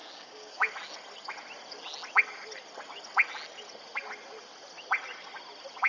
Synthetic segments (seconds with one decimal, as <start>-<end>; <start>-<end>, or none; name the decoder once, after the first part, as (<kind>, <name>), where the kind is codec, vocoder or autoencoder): 0.0-0.7 (codec, DAC)